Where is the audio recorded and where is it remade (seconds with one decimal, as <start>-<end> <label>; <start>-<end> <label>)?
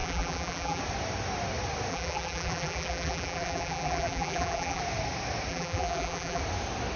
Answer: 0.0-0.8 remade; 0.8-1.9 recorded; 1.9-4.8 remade; 4.8-5.5 recorded; 5.5-6.4 remade; 6.4-7.0 recorded